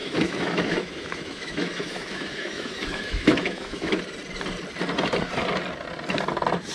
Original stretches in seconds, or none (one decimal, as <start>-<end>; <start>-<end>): 4.0-6.7